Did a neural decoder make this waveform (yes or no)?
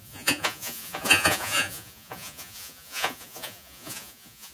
yes